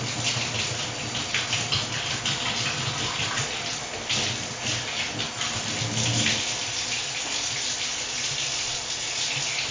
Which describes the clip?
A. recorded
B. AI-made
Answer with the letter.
A